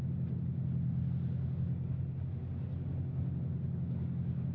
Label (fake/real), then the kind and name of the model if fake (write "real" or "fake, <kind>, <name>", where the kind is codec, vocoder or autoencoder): real